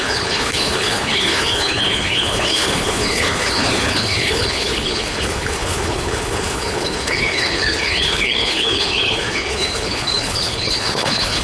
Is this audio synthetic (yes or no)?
yes